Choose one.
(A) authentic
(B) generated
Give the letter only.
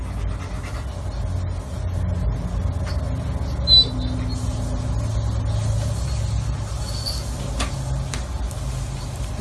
A